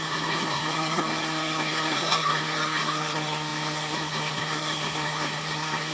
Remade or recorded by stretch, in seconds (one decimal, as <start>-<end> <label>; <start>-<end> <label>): 0.0-5.9 remade